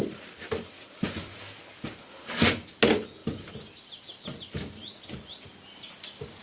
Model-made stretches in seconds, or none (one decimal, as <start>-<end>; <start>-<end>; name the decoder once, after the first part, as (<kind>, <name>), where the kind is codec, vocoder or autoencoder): none